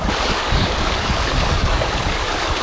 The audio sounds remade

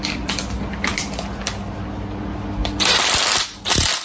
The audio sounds recorded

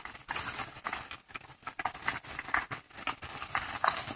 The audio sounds recorded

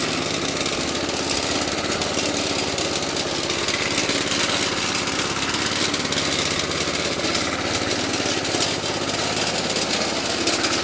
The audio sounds recorded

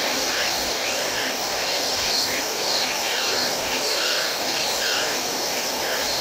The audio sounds remade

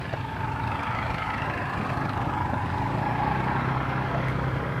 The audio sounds remade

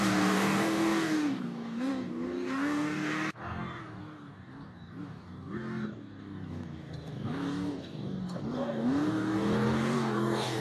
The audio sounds remade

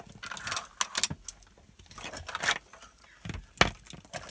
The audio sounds recorded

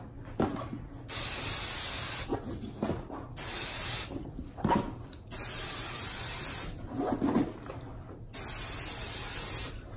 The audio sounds recorded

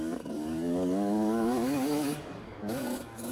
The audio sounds remade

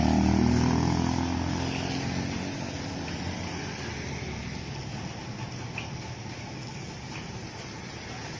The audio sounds recorded